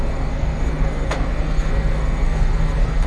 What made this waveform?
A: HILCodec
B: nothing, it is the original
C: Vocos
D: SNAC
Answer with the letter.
D